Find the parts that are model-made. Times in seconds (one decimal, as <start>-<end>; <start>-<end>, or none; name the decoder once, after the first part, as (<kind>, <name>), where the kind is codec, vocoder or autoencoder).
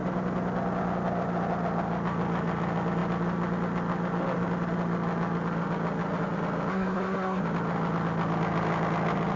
6.7-7.4 (codec, SNAC)